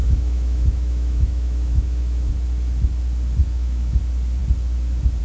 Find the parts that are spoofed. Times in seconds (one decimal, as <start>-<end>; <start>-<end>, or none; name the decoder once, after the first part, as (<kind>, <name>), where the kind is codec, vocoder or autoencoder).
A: 0.0-2.3 (autoencoder, DAC-VAE); 3.4-4.0